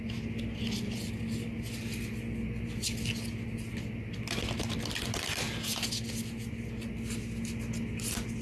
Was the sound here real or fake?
real